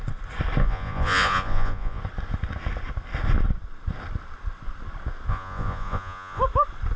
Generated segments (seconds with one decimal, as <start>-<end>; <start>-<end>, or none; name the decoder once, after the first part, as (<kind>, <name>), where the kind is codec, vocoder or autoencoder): 0.6-2.0 (vocoder, Vocos); 5.3-6.4